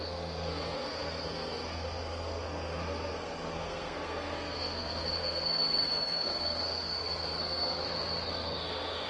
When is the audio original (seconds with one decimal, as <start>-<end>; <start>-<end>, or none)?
7.8-8.3